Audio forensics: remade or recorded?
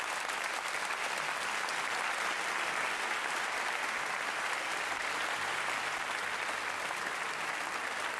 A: recorded